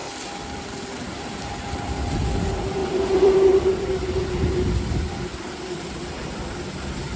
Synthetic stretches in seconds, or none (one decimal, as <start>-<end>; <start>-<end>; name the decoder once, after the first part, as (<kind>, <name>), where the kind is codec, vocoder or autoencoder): 2.8-3.4 (vocoder, BigVGAN v2); 5.3-6.0